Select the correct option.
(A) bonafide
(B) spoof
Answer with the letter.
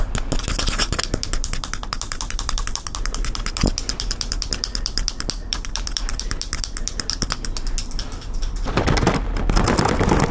B